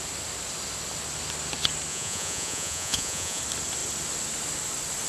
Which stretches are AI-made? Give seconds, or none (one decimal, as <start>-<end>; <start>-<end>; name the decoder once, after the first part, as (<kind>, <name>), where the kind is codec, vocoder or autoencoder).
1.9-3.4 (vocoder, Vocos)